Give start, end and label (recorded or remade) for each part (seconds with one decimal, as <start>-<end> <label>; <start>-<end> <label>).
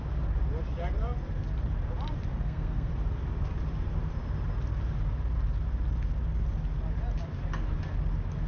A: 0.0-2.3 recorded; 2.3-2.9 remade; 2.9-8.5 recorded